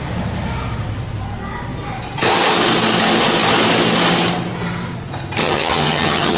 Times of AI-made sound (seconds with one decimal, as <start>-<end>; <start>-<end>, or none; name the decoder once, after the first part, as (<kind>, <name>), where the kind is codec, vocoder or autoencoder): 5.4-6.4 (vocoder, HiFi-GAN)